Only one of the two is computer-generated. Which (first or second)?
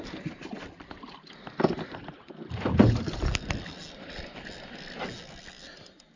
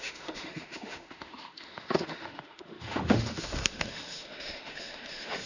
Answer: second